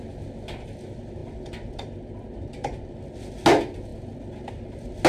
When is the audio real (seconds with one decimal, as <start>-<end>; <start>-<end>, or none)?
0.0-5.1